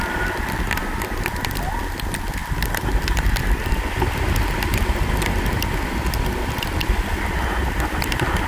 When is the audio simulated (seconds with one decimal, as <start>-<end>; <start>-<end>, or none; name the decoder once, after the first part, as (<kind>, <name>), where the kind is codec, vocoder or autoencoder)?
none